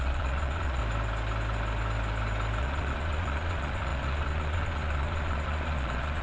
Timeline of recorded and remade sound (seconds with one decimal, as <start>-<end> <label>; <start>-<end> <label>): 0.0-0.8 remade; 0.8-2.6 recorded; 2.6-6.2 remade